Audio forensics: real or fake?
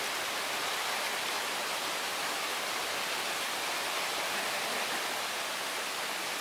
real